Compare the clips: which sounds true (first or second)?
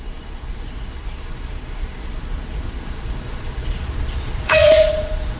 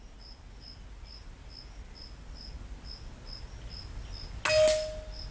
second